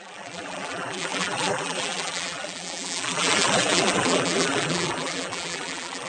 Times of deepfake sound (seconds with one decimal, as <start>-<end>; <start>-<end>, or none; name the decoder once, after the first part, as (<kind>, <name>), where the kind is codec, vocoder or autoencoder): 0.0-6.1 (vocoder, BigVGAN v2)